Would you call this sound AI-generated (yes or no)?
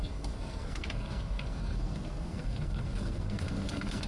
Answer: yes